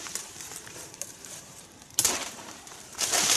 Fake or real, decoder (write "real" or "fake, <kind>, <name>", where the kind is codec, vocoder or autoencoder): fake, vocoder, BigVGAN v2